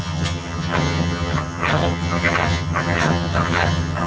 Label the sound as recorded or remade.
remade